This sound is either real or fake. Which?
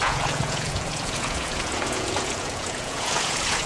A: fake